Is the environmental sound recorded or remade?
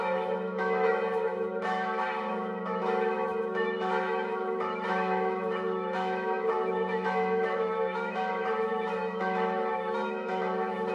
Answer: remade